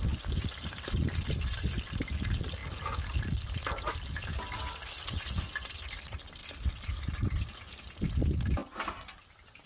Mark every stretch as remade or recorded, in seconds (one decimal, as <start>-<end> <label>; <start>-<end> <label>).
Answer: 0.0-9.7 recorded